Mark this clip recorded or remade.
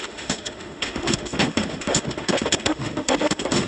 remade